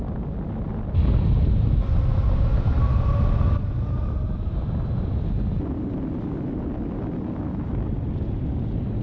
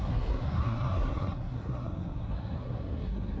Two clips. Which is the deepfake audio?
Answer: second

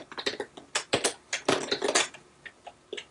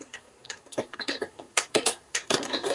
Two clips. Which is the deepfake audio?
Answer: second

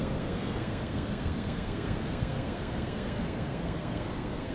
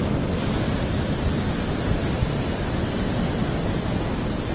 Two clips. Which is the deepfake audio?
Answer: first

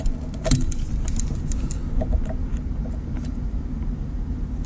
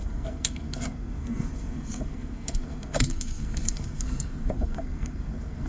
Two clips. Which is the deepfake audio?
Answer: second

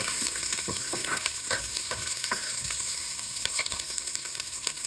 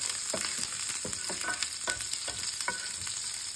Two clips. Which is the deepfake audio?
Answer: first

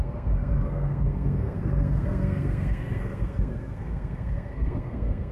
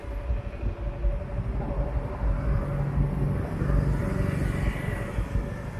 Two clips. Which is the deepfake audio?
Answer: first